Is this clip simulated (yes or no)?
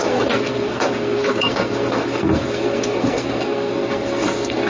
yes